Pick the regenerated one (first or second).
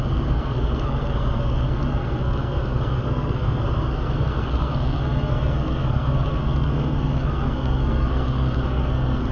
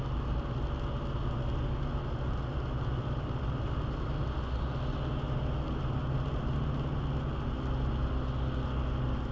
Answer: first